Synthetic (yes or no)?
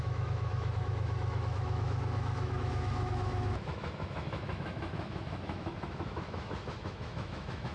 yes